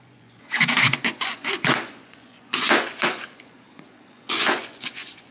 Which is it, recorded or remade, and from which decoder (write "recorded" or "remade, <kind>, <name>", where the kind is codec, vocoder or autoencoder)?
remade, vocoder, Vocos